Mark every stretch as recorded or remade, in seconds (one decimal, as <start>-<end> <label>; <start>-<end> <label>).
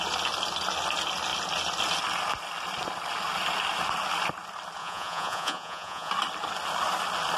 0.0-4.8 recorded; 4.8-6.1 remade; 6.1-7.4 recorded